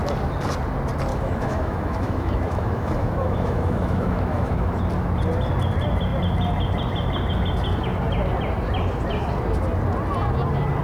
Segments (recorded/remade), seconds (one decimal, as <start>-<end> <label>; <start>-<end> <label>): 0.0-1.1 recorded; 1.1-4.7 remade; 4.7-10.8 recorded